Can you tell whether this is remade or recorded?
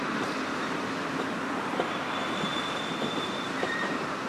remade